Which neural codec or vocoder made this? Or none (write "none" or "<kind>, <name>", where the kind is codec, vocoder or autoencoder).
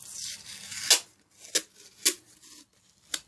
none